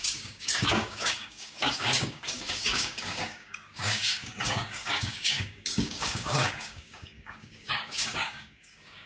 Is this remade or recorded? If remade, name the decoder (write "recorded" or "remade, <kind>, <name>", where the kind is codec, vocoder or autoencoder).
remade, codec, DAC